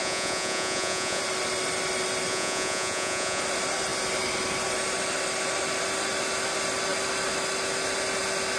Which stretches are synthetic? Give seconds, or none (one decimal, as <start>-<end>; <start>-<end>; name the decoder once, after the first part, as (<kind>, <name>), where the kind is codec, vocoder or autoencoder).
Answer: 0.0-1.2 (vocoder, Vocos); 2.3-3.4